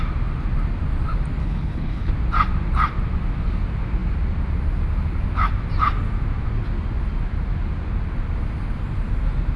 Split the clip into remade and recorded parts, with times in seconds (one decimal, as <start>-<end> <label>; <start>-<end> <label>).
0.0-1.4 recorded; 1.4-2.1 remade; 2.1-9.6 recorded